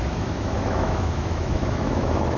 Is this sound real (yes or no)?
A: no